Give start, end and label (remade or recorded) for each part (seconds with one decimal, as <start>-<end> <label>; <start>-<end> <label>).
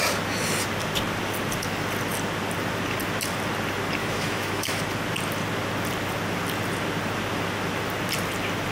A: 0.0-4.0 recorded; 4.0-4.8 remade; 4.8-8.7 recorded